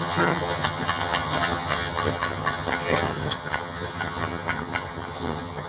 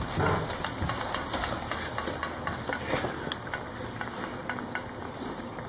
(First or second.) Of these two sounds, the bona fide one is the second